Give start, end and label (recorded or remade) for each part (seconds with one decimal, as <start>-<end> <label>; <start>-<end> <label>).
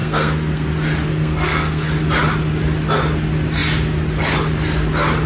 0.0-0.7 remade; 0.7-1.1 recorded; 1.1-1.9 remade; 1.9-5.3 recorded